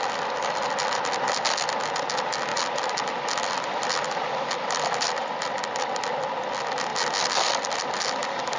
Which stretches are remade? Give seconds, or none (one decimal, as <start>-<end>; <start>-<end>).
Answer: none